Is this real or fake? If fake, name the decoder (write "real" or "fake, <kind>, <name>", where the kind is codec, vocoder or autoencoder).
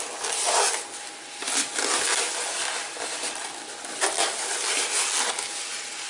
real